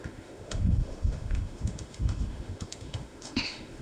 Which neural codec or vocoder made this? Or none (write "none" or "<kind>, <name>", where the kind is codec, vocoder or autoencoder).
autoencoder, DAC-VAE